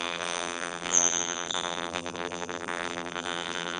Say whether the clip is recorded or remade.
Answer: remade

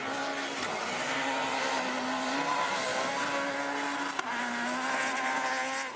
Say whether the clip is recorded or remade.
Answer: recorded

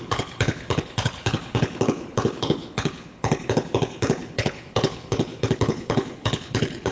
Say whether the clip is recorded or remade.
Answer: remade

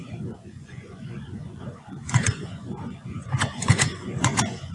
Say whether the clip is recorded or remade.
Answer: remade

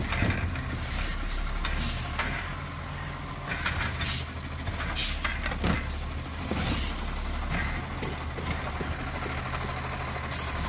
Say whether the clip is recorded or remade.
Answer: recorded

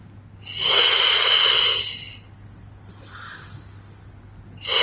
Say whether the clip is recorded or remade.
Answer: recorded